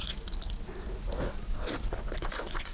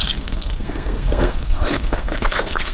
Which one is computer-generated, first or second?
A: second